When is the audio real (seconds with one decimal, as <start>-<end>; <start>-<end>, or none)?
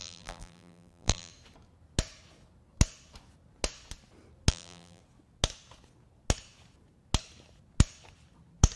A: 1.3-4.5; 5.0-8.8